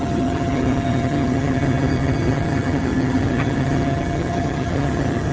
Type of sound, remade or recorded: remade